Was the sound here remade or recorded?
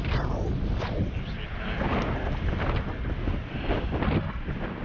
remade